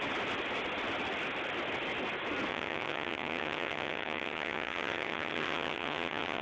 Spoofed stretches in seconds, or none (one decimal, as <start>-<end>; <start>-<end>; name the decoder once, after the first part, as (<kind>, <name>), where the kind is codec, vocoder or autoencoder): 2.5-6.4 (vocoder, HiFi-GAN)